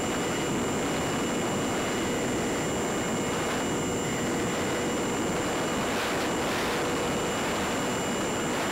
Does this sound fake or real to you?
real